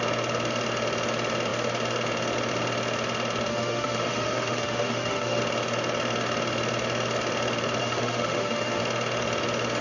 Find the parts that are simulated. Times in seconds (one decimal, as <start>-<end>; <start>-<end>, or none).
3.5-5.4; 7.8-8.8